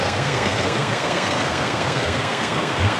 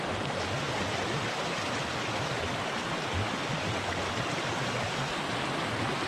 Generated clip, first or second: first